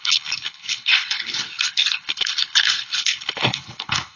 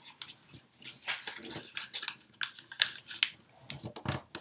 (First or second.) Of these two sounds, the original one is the second